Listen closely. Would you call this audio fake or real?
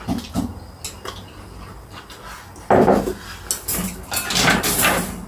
real